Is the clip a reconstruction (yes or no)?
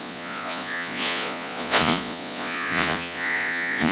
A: yes